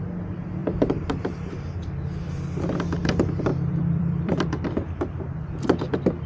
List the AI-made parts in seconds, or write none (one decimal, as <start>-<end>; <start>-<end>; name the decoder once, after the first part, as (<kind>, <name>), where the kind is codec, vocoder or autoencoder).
0.6-1.2 (vocoder, BigVGAN v2); 3.0-5.5